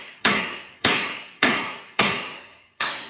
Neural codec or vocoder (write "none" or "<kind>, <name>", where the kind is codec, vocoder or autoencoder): codec, SNAC